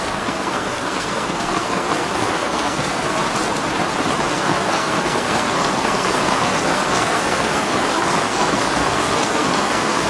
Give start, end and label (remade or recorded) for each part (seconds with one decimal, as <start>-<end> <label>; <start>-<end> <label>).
0.0-3.2 remade; 3.2-4.3 recorded; 4.3-10.1 remade

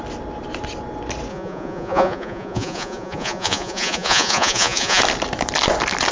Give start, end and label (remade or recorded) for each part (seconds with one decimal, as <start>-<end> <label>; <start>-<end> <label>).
0.0-1.3 recorded; 1.3-5.0 remade; 5.0-6.1 recorded